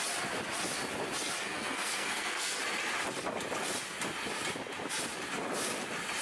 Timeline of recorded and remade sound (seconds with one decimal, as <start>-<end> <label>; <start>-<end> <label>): 0.0-1.4 recorded; 1.4-2.6 remade; 2.6-6.2 recorded